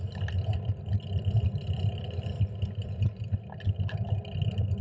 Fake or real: real